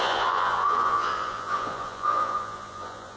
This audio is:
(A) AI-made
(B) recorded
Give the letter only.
A